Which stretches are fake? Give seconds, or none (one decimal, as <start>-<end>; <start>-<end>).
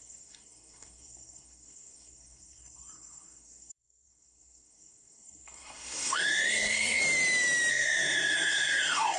0.0-7.0; 7.7-9.2